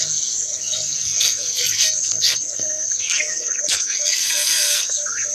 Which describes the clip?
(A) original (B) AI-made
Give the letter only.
B